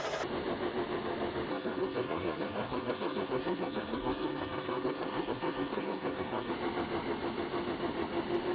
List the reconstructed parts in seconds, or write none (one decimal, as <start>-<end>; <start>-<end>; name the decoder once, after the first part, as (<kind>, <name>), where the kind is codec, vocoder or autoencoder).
1.5-6.5 (codec, SNAC)